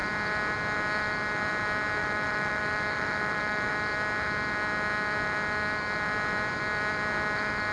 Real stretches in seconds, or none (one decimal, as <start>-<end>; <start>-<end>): 0.0-2.0; 3.7-7.7